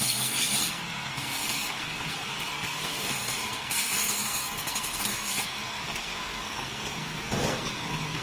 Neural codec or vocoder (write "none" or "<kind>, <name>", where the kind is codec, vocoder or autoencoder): codec, SNAC